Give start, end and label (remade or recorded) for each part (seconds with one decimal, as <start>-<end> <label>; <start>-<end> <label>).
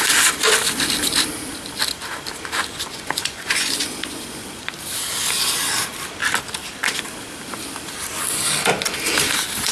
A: 0.0-2.7 recorded; 2.7-4.7 remade; 4.7-9.7 recorded